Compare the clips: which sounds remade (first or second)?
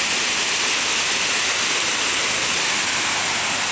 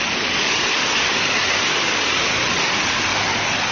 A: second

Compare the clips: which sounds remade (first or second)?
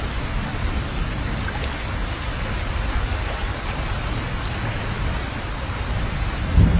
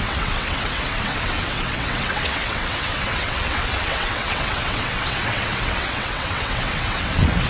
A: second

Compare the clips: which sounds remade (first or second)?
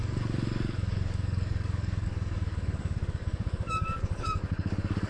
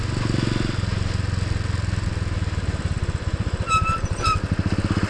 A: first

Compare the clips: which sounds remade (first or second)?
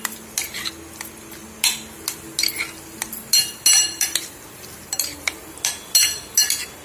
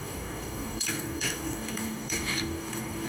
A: second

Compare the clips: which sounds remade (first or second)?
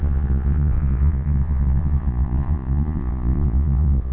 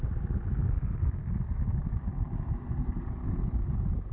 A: first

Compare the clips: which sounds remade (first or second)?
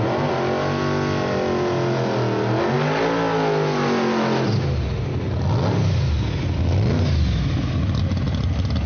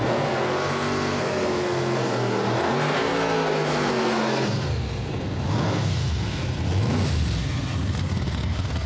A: second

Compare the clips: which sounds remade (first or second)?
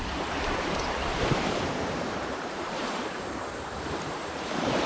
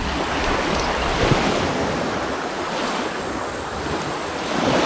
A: first